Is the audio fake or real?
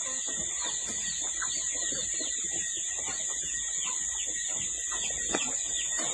real